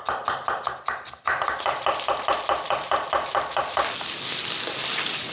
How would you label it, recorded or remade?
recorded